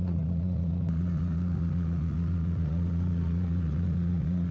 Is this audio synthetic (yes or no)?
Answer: yes